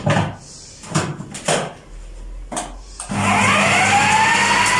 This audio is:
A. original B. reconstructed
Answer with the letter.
A